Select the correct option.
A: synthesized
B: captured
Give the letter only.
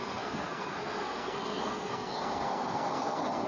A